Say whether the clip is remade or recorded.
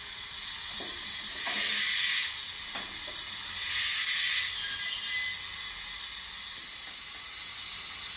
recorded